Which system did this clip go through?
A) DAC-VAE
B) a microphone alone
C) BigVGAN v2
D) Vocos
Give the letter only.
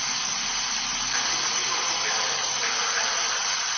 B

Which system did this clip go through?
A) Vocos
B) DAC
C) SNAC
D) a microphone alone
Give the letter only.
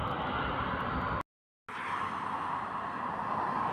D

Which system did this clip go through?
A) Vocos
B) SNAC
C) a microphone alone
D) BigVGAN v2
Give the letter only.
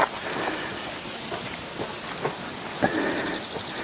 C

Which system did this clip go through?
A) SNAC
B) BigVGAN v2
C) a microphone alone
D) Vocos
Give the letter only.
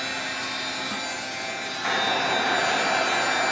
C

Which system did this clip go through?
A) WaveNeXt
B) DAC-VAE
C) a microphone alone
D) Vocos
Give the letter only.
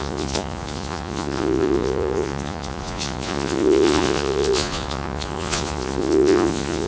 D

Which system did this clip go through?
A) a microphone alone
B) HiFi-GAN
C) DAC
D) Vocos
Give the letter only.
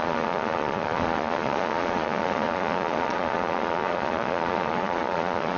D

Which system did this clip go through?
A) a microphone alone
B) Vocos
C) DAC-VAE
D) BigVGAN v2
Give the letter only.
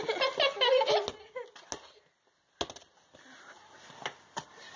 A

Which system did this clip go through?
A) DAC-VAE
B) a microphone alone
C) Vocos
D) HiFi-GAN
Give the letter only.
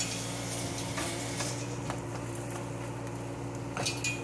B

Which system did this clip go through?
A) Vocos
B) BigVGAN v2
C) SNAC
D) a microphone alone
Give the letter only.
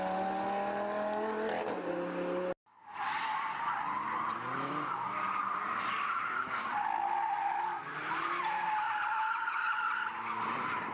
D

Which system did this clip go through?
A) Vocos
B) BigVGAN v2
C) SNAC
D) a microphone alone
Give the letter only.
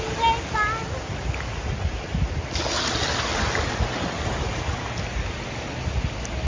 D